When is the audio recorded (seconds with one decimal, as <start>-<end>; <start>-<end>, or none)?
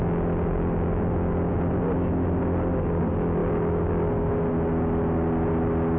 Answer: 0.0-6.0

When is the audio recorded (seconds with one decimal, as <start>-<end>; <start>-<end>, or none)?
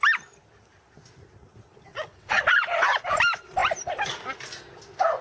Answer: 0.0-1.9; 2.4-5.2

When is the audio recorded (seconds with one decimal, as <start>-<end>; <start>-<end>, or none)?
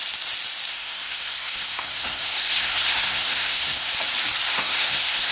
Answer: 0.0-0.7; 3.9-4.5